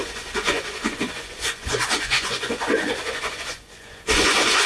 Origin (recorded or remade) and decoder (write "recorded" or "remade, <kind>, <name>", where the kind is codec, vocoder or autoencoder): remade, vocoder, Vocos